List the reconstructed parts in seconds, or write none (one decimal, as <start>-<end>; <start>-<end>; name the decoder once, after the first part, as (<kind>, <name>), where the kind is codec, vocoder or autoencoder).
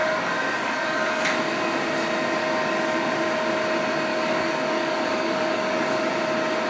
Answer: 0.0-1.2 (codec, DAC); 2.4-3.1; 4.1-6.1